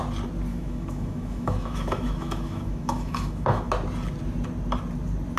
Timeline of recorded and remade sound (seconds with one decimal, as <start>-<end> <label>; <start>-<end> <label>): 0.0-0.5 recorded; 0.5-3.7 remade; 3.7-5.4 recorded